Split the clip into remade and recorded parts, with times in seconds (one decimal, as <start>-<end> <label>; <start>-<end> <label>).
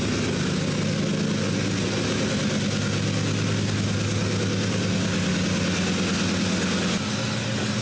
0.0-7.8 recorded